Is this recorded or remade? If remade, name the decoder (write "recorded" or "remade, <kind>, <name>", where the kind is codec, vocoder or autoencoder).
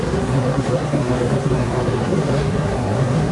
remade, codec, SNAC